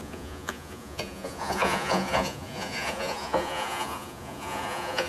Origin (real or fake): fake